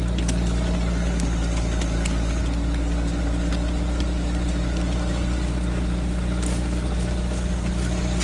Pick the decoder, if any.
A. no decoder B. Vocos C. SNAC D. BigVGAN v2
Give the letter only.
A